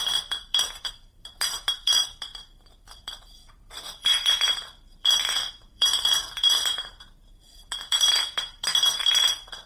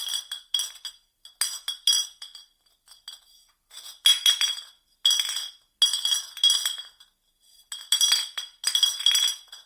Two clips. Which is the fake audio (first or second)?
first